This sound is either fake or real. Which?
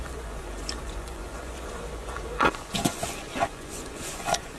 fake